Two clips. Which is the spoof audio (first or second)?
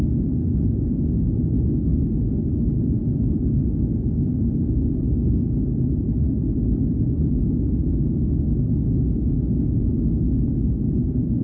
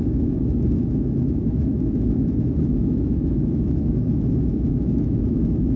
second